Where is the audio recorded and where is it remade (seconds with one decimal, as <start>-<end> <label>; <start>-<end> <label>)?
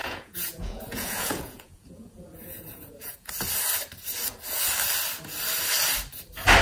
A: 0.0-3.3 remade; 3.3-6.6 recorded